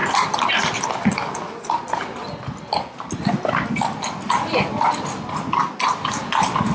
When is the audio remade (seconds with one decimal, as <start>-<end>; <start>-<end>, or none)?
none